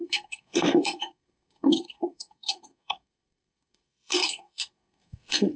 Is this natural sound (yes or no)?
no